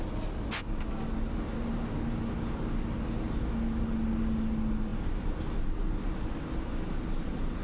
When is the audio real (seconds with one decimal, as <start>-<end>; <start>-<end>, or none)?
0.0-7.6